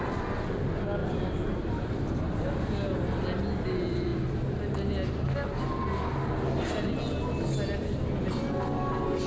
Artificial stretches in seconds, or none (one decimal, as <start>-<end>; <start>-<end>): 1.0-2.5